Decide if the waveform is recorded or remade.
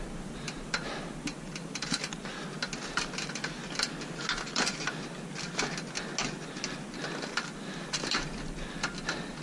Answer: recorded